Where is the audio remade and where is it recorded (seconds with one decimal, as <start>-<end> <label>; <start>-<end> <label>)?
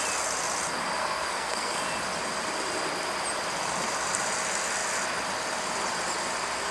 0.0-1.0 recorded; 1.0-1.8 remade; 1.8-6.7 recorded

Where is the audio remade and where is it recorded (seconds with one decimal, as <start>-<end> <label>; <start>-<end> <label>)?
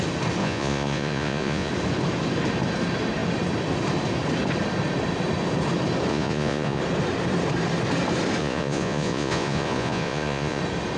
0.0-0.4 recorded; 0.4-1.7 remade; 1.7-6.1 recorded; 6.1-6.8 remade; 6.8-8.4 recorded; 8.4-10.6 remade; 10.6-11.0 recorded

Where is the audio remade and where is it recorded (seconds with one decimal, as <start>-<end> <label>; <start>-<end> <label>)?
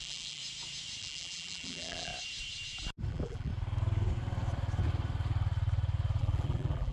0.0-0.4 remade; 0.4-1.0 recorded; 1.0-2.1 remade; 2.1-3.1 recorded; 3.1-3.5 remade; 3.5-6.2 recorded; 6.2-6.9 remade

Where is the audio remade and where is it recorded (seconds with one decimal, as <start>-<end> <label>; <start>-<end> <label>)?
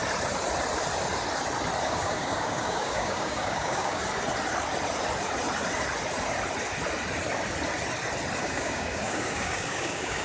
0.0-1.8 recorded; 1.8-4.0 remade; 4.0-8.4 recorded; 8.4-10.2 remade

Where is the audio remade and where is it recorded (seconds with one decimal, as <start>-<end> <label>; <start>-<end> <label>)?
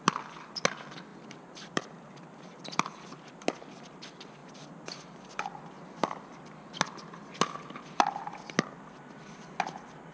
0.0-1.1 recorded; 1.1-3.3 remade; 3.3-4.4 recorded; 4.4-5.1 remade; 5.1-10.1 recorded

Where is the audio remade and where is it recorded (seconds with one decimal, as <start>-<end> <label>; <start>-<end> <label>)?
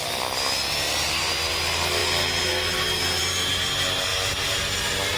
0.0-5.2 recorded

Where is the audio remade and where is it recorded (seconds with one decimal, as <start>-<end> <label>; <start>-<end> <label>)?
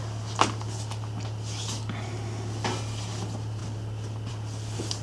0.0-5.0 recorded